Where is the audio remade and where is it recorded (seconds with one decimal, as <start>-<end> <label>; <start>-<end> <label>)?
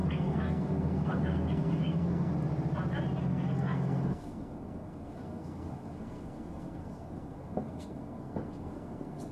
0.0-2.3 remade; 2.3-3.2 recorded; 3.2-9.3 remade